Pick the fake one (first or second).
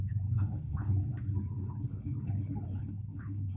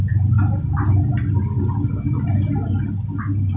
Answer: first